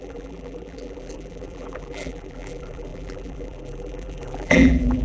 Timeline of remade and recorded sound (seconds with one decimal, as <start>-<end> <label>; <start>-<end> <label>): 0.0-5.0 remade